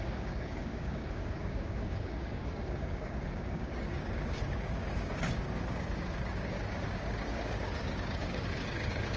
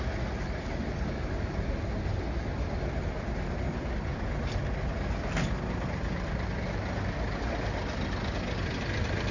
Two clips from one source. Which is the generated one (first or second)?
first